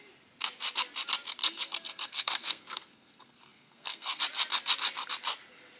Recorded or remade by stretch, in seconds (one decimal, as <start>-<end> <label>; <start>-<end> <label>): 0.0-1.4 recorded; 1.4-4.2 remade; 4.2-5.8 recorded